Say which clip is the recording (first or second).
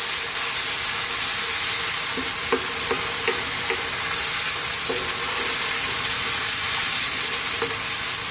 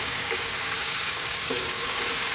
first